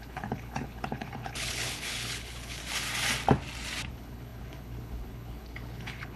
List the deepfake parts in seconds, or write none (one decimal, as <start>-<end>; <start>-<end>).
0.0-2.6; 3.9-6.2